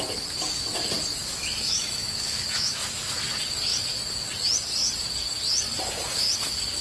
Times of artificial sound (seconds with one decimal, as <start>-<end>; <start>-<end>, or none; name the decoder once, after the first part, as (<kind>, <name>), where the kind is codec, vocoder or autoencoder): 1.2-3.3 (autoencoder, DAC-VAE)